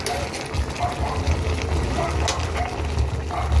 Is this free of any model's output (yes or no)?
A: yes